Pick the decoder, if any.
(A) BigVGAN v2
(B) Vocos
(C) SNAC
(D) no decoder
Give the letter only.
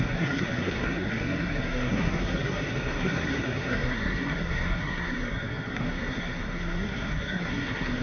C